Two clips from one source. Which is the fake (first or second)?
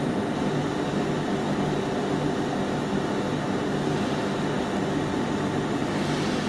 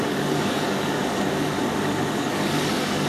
second